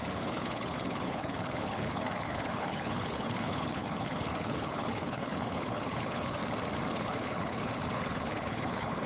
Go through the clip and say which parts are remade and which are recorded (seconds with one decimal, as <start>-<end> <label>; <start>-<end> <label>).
0.0-6.4 remade; 6.4-6.9 recorded; 6.9-9.1 remade